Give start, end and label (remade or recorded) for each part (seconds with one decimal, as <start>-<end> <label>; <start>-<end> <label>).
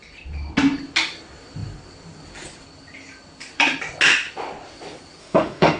0.0-5.2 recorded; 5.2-5.8 remade